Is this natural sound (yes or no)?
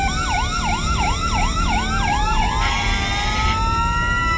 yes